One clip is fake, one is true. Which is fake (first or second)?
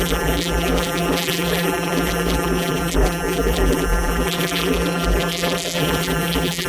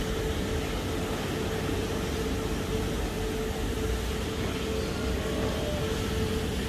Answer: first